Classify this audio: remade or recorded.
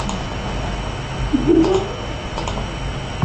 recorded